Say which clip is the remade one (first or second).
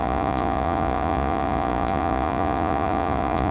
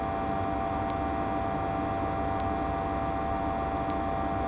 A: first